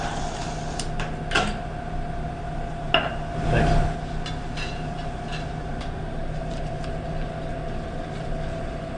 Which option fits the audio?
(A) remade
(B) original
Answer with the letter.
B